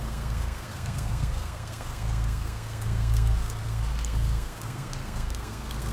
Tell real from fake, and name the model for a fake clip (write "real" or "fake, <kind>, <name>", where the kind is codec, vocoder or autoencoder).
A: fake, codec, SNAC